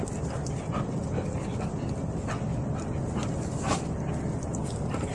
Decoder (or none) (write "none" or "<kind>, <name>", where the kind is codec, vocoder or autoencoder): none